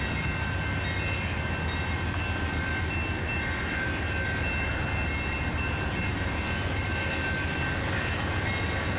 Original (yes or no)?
yes